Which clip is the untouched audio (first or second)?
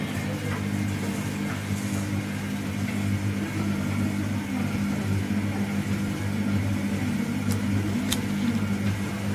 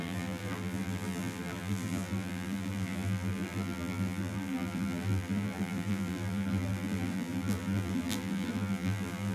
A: first